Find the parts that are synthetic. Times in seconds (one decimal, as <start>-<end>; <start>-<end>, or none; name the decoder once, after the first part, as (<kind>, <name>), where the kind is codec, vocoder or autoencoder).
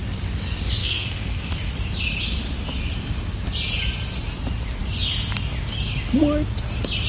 0.8-1.5 (codec, SNAC)